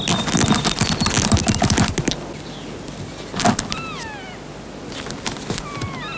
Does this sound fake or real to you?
real